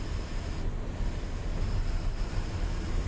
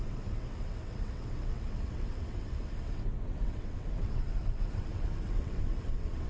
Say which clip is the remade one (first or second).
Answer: second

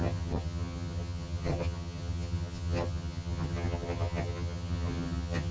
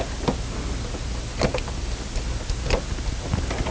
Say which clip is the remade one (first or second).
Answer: first